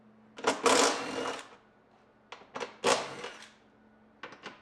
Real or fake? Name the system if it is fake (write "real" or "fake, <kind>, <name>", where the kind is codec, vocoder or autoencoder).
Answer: real